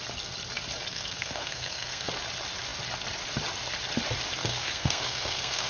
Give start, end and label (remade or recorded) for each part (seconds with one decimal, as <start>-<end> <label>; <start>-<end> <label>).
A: 0.0-0.9 recorded; 0.9-2.1 remade; 2.1-4.4 recorded; 4.4-5.7 remade